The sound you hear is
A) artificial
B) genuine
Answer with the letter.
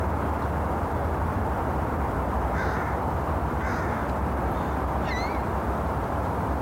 A